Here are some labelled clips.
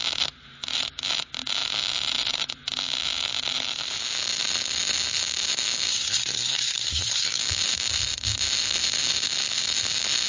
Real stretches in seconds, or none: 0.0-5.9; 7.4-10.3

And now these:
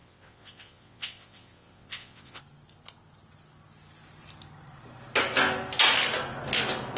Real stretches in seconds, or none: 2.4-7.0